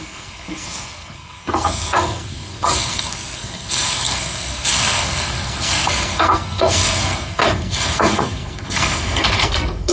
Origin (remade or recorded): remade